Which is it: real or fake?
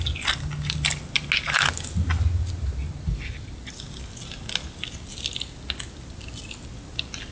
real